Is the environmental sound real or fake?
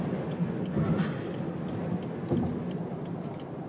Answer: real